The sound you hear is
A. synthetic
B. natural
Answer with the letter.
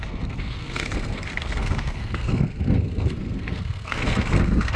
A